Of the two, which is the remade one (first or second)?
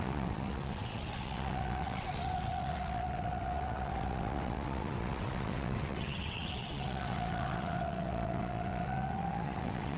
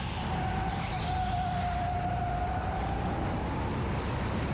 first